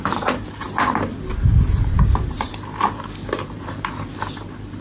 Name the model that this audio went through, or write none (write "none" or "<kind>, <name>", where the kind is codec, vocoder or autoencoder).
none